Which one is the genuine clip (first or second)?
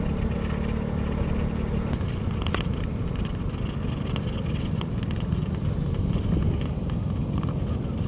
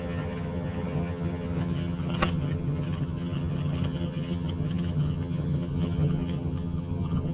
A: first